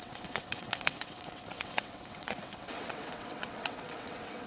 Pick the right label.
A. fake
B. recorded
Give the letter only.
A